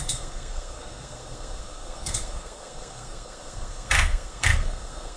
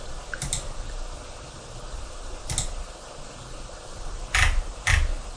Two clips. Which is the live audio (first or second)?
second